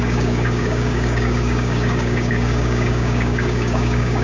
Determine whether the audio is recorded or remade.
remade